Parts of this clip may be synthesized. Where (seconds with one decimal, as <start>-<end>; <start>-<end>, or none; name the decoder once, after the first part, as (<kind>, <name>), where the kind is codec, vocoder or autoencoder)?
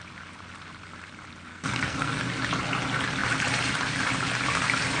1.5-2.2 (codec, SNAC)